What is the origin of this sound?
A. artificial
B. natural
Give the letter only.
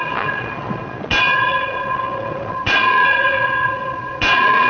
A